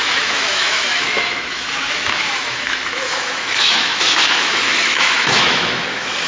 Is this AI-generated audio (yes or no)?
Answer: yes